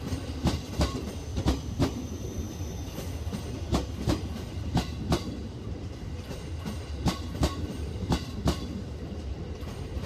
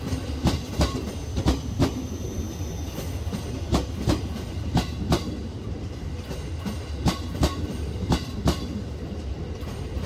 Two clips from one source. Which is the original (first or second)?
second